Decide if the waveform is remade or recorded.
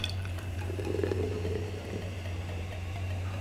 remade